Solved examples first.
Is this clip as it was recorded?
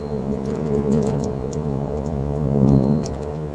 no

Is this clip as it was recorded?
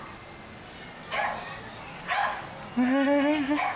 yes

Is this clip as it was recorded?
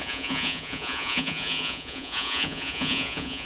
no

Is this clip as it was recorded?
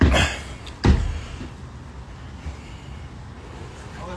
yes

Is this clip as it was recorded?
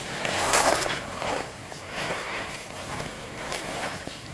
no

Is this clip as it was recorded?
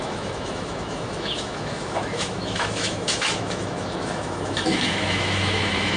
no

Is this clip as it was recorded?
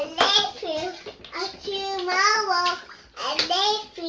yes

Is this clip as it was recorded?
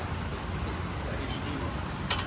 yes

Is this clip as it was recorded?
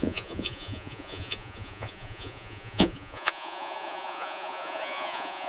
no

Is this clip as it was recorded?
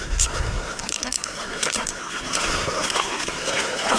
no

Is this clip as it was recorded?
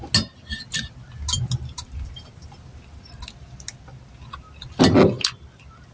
yes